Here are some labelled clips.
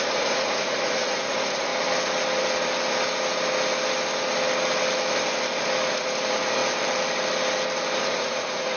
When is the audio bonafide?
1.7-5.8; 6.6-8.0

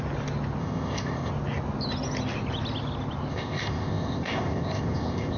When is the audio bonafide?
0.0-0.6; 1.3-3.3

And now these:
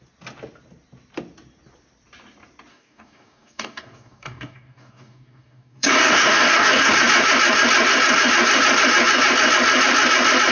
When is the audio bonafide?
0.0-2.7; 6.9-10.5

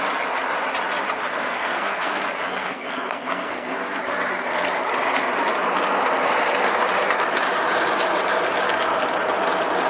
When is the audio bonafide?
0.0-1.3; 2.2-2.6; 4.0-9.9

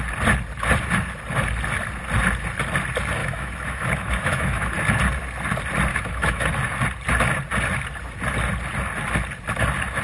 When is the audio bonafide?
0.0-3.2; 4.7-5.9; 6.5-10.0

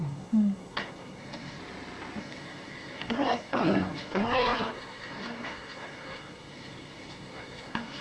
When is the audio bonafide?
1.6-2.2